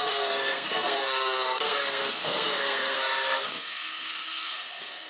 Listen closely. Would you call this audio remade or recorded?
remade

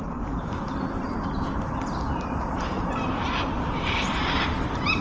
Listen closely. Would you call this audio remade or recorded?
remade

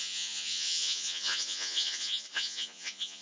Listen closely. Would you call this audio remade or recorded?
remade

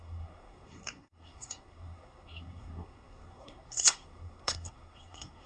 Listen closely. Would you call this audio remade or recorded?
remade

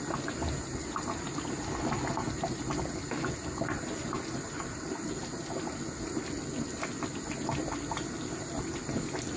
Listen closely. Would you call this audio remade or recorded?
recorded